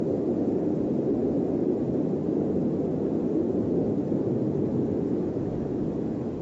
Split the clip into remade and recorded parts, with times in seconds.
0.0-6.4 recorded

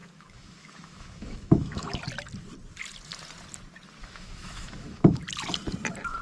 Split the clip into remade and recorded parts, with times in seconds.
0.0-2.0 remade; 2.0-4.0 recorded; 4.0-5.2 remade; 5.2-6.2 recorded

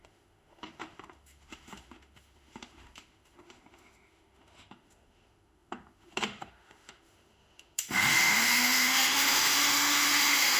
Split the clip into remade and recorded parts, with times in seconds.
0.0-10.6 remade